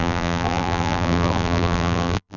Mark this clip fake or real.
fake